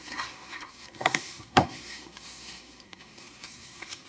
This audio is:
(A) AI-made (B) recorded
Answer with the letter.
A